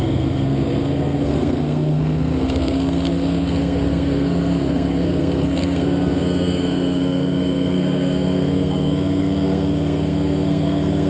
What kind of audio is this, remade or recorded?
remade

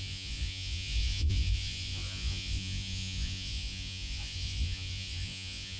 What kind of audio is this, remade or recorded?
remade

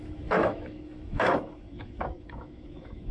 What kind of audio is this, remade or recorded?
remade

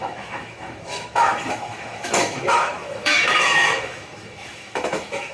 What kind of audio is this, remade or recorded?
remade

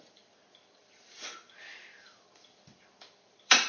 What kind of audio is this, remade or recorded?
remade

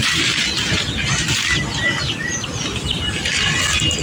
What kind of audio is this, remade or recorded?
recorded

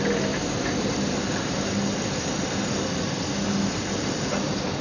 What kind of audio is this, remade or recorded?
recorded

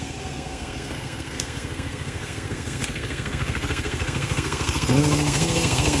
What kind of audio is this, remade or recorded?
remade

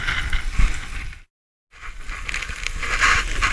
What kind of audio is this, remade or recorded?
recorded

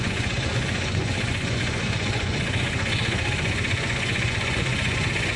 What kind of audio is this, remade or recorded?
remade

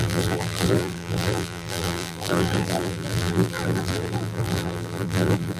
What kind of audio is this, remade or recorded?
remade